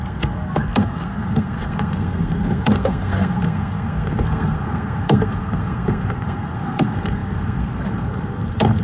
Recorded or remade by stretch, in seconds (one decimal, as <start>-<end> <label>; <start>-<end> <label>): 0.0-8.8 remade